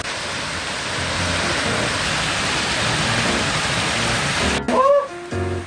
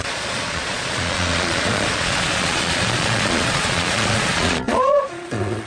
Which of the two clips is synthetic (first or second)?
second